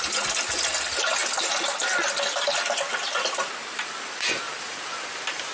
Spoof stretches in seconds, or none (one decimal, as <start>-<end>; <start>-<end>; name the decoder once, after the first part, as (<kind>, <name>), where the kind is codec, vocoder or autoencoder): none